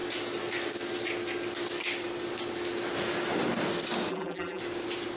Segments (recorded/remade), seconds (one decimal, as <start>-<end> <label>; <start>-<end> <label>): 0.0-4.1 recorded; 4.1-4.6 remade; 4.6-5.2 recorded